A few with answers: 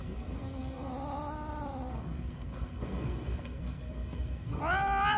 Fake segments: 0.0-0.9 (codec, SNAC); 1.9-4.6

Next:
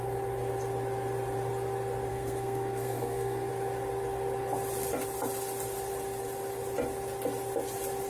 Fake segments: 2.1-3.5 (codec, SNAC)

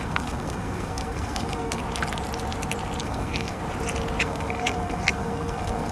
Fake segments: 0.0-1.8 (codec, SNAC); 3.0-3.6; 4.2-5.9

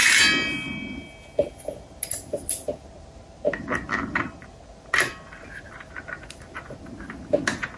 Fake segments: none

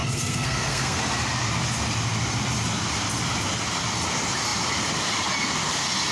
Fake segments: 0.0-1.0 (codec, SNAC)